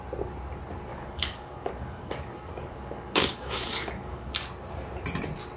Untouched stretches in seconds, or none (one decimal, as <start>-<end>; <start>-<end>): 0.0-0.9; 4.3-5.6